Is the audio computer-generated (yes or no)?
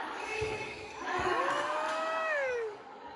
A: yes